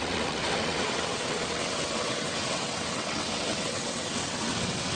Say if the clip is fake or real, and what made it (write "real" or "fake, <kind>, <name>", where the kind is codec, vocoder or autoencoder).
fake, vocoder, WaveNeXt